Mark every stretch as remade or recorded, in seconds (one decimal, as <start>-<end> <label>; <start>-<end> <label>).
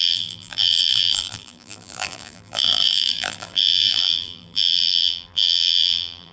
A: 0.0-6.3 remade